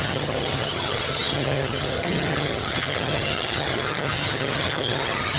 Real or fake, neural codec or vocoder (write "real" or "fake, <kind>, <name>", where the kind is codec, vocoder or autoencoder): fake, vocoder, HiFi-GAN